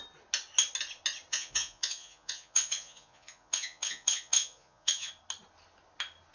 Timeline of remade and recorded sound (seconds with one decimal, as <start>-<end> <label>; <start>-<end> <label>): 0.0-1.3 recorded; 1.3-5.1 remade; 5.1-6.3 recorded